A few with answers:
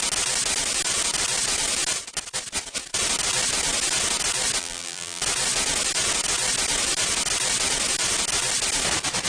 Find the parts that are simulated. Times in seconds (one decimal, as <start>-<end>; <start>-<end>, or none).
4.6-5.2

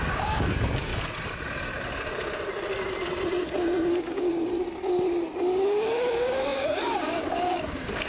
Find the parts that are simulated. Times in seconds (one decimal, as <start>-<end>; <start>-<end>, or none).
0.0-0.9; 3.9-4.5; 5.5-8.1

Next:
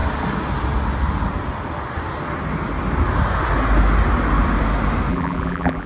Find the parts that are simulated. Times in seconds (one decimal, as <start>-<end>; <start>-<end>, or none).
5.1-5.9

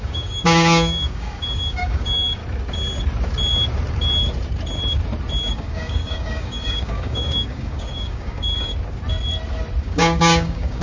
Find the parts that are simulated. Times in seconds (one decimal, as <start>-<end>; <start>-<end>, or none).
0.0-2.4; 5.5-8.7; 9.8-10.8

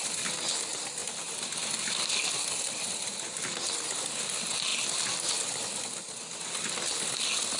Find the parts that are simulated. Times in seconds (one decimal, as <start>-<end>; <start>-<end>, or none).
none

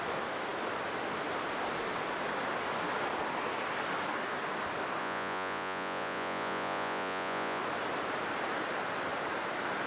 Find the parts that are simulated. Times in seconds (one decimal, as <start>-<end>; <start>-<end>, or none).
5.0-7.6

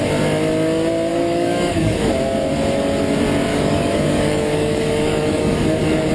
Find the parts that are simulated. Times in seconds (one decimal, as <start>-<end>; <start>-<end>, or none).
1.1-2.1; 3.5-6.1